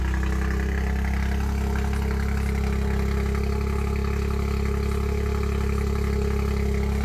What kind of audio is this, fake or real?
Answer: real